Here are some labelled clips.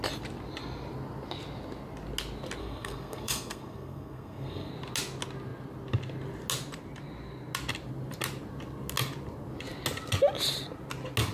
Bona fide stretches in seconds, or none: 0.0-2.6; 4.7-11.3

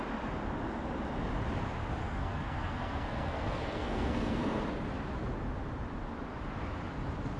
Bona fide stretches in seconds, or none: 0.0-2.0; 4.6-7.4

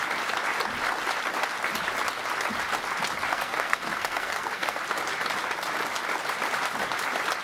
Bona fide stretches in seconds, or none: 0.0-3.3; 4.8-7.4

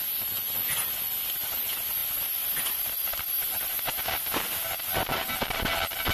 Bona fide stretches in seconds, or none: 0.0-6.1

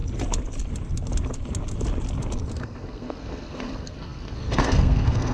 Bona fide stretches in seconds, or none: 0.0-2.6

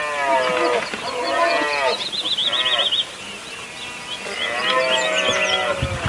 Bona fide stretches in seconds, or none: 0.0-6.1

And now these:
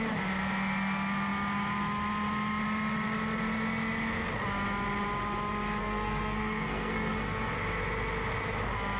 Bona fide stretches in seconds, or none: 0.0-5.8; 7.5-9.0